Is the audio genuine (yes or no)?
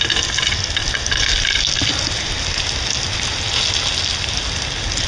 yes